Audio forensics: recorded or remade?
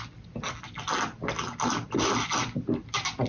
recorded